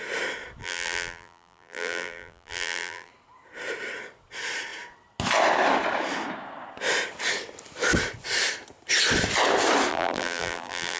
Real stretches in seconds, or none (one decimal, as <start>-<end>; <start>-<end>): 0.0-0.6; 3.1-9.9